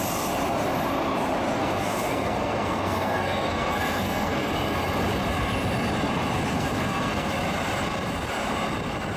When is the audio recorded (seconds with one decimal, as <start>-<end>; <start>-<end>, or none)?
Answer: 0.0-1.6; 4.5-6.5; 7.3-9.2